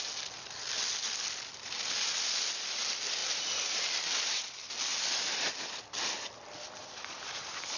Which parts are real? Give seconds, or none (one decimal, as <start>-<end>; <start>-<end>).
0.0-7.8